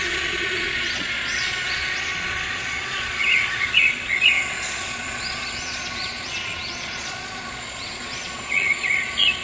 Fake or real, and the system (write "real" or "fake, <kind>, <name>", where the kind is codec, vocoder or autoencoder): fake, vocoder, Vocos